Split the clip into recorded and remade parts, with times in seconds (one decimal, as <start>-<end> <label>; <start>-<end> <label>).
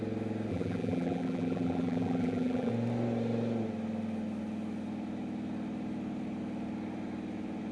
0.0-0.5 recorded; 0.5-2.7 remade; 2.7-7.7 recorded